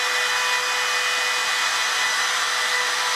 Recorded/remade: recorded